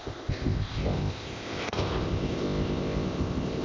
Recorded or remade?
remade